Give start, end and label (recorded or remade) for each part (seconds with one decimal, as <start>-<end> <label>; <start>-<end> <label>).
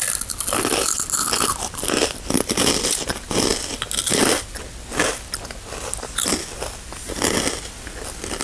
0.0-8.4 recorded